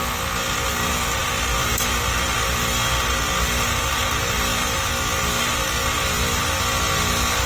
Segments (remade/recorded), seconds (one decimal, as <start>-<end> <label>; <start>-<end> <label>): 0.0-7.5 recorded